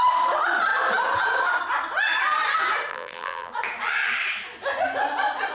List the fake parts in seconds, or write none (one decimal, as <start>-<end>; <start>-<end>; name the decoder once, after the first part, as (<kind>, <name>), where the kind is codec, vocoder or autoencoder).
2.9-3.5 (vocoder, BigVGAN v2)